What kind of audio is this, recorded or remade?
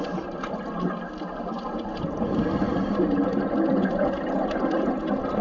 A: recorded